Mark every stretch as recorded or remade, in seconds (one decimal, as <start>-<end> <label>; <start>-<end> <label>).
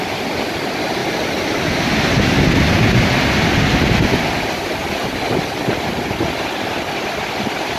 0.0-7.8 recorded